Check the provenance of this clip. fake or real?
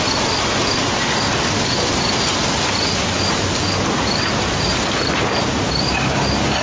real